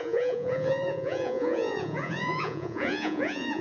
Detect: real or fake fake